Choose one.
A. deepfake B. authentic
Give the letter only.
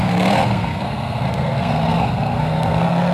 A